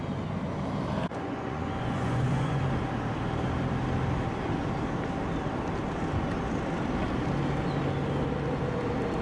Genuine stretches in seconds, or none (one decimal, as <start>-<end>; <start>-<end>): 0.0-1.1; 2.6-9.2